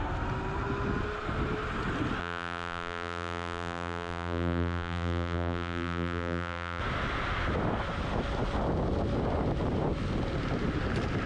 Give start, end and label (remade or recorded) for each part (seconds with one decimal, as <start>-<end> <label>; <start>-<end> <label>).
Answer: 0.0-2.2 recorded; 2.2-6.8 remade; 6.8-11.3 recorded